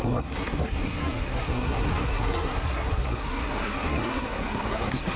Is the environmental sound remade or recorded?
remade